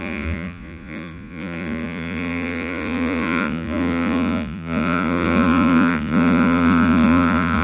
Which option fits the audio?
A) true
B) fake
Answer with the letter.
B